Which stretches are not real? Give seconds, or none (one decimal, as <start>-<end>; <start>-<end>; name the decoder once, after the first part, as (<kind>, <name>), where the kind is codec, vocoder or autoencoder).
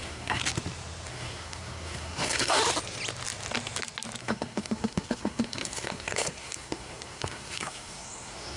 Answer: 0.0-0.4 (codec, SNAC); 1.1-2.6; 4.2-8.6